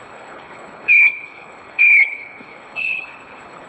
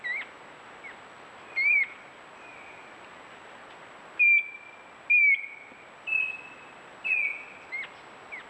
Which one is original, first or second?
second